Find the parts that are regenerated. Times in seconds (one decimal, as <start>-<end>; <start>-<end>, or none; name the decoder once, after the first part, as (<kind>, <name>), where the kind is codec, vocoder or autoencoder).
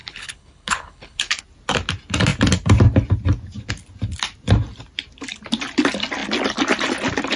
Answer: 0.0-1.4 (codec, HILCodec)